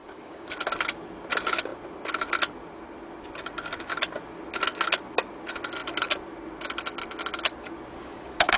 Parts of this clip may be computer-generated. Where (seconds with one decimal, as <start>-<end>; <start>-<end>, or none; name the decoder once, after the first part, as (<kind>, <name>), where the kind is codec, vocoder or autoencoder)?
0.0-0.5 (codec, DAC); 8.0-8.6